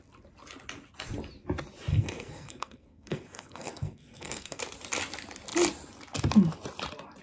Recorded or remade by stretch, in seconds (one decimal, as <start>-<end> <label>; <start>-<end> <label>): 0.0-1.9 recorded; 1.9-4.6 remade; 4.6-7.2 recorded